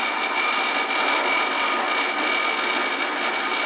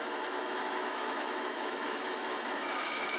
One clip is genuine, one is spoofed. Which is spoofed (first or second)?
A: second